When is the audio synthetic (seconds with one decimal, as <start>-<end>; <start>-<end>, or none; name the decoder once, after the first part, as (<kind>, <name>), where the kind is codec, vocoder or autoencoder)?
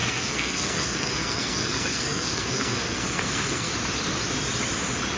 0.0-3.7 (codec, SNAC)